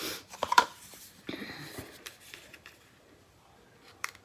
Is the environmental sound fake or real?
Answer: fake